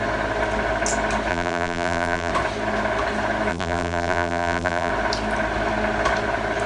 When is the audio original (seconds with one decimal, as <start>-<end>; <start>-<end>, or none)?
0.0-1.3; 2.3-3.5; 4.9-6.7